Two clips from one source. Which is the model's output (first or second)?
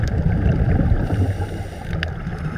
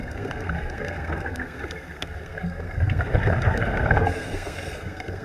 second